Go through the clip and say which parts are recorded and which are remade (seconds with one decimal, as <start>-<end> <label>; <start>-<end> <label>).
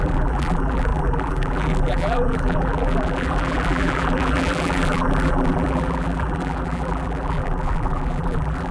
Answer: 0.0-8.7 remade